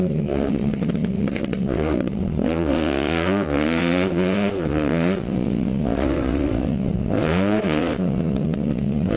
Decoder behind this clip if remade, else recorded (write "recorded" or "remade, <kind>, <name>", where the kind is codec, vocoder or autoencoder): remade, vocoder, WaveNeXt